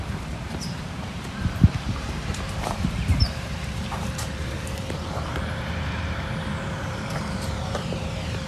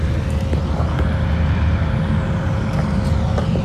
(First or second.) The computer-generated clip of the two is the first